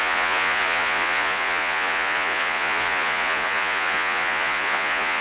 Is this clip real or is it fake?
fake